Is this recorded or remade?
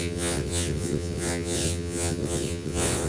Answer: remade